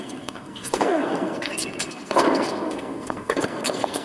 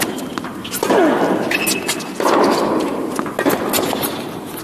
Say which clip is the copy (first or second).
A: first